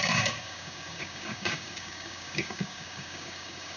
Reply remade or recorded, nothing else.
remade